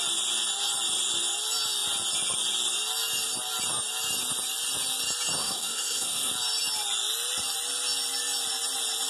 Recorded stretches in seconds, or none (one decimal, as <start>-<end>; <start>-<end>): 0.0-5.4; 6.3-9.1